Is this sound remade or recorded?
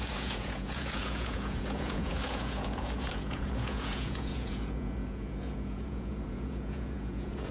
remade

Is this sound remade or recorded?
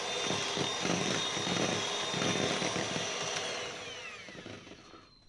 recorded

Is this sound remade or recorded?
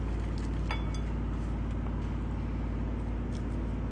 recorded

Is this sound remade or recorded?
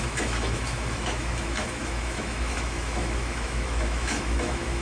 remade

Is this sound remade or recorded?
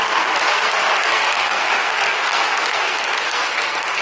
remade